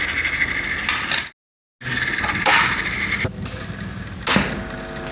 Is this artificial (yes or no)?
no